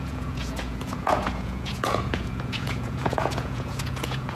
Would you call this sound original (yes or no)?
no